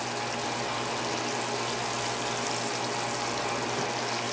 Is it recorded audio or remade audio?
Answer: recorded